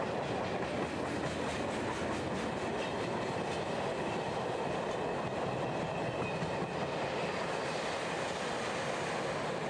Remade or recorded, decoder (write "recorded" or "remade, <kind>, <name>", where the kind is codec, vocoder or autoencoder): recorded